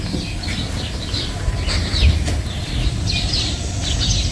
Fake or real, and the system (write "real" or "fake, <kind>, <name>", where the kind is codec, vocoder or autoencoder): real